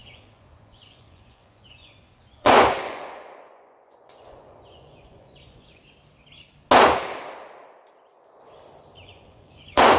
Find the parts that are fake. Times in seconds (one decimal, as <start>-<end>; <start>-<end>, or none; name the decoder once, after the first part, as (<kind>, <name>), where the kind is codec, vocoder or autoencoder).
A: 0.0-5.8 (vocoder, Vocos); 9.0-10.0